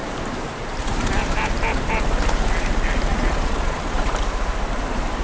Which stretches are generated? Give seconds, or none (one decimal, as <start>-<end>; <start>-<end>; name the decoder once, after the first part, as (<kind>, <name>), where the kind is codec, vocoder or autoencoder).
3.1-4.0 (vocoder, Vocos)